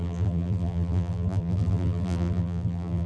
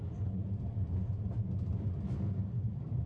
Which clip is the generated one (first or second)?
first